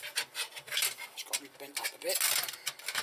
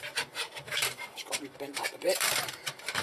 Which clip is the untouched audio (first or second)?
first